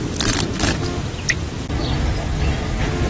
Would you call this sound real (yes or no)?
yes